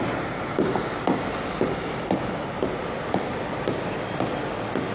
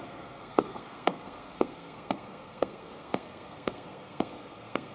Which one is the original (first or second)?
first